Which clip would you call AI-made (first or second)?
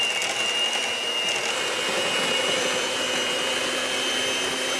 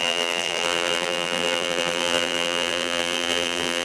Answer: second